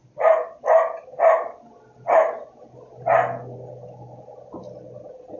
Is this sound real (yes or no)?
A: yes